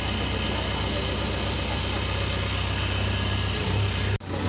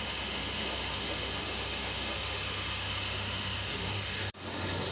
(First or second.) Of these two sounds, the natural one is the first